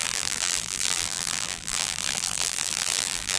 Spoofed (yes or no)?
yes